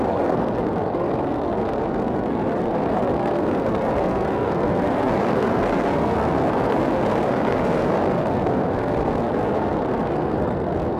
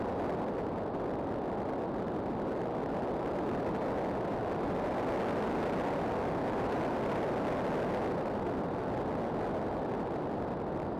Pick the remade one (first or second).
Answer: first